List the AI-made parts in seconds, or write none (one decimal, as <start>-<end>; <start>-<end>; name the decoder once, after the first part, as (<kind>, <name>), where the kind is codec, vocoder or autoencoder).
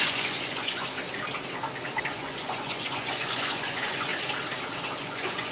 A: 0.0-1.0 (vocoder, Vocos); 2.1-4.1; 4.9-5.5